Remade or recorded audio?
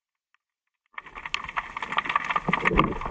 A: recorded